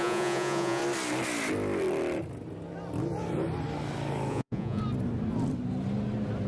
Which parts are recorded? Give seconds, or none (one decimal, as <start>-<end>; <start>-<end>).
0.8-4.3; 4.8-6.5